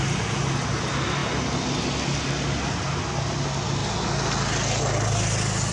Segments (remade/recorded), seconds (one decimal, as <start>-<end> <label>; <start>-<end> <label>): 0.0-5.7 recorded